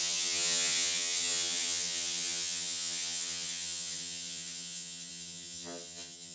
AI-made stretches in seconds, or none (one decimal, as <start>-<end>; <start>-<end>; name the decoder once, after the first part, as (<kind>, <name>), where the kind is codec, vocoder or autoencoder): 0.0-6.3 (vocoder, HiFi-GAN)